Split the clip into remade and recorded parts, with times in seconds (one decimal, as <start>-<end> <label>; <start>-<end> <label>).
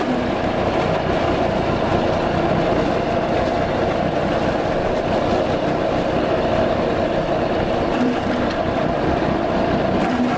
0.0-10.4 recorded